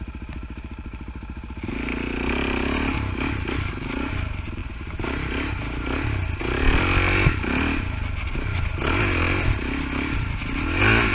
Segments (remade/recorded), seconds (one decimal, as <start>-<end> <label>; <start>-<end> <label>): 0.0-11.1 recorded